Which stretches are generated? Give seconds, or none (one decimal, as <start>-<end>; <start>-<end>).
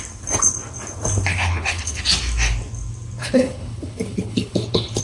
1.3-2.0; 3.2-5.0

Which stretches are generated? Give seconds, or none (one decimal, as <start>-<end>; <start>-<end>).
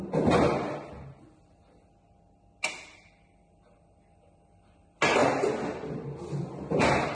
none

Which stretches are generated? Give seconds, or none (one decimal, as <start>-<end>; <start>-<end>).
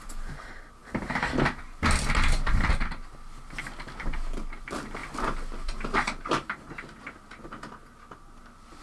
none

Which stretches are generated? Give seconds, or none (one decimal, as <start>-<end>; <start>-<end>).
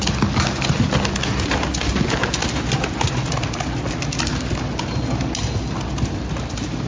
none